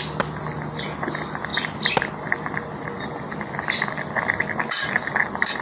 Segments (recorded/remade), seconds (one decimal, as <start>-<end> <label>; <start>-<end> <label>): 0.0-5.6 recorded